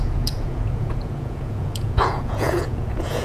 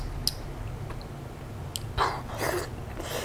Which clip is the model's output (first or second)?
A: first